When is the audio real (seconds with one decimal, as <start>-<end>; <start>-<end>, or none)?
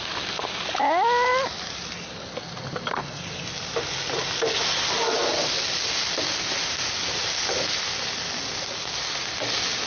0.0-9.9